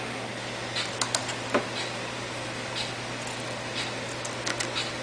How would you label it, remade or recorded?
recorded